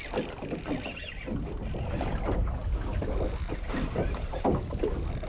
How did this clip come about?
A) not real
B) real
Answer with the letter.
B